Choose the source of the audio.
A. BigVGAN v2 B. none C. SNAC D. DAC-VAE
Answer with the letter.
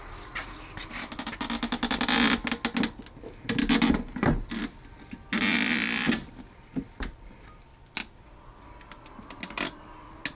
B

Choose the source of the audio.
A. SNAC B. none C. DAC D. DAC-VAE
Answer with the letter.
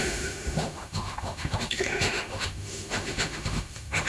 D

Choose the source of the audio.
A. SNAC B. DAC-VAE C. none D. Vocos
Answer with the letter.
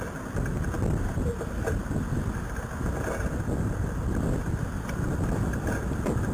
C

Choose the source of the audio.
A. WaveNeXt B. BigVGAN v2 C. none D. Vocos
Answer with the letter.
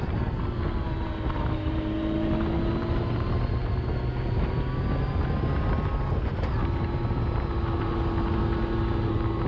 C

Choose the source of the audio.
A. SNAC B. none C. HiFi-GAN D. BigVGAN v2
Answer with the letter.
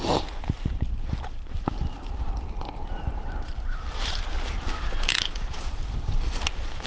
D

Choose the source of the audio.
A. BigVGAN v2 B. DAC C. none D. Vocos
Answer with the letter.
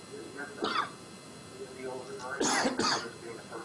C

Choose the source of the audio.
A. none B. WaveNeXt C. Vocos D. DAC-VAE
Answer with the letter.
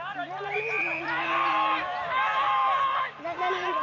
A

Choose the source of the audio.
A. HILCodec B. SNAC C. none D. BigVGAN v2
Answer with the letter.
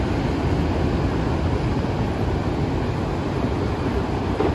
C